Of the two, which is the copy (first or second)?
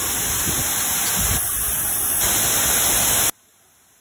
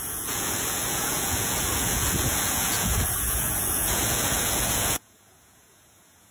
second